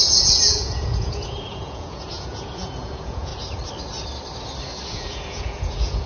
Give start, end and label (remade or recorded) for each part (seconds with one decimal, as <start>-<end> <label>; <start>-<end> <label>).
0.0-3.3 remade; 3.3-4.9 recorded; 4.9-6.1 remade